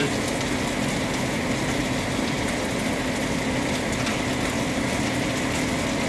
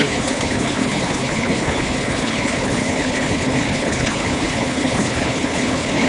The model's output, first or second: second